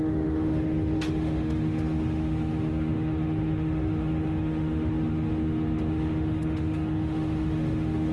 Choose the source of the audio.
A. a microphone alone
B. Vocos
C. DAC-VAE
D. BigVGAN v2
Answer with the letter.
C